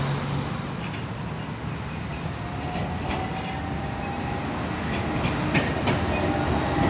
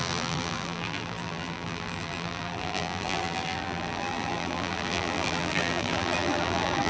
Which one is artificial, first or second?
second